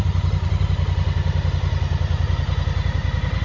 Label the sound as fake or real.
real